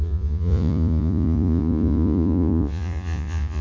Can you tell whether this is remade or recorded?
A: remade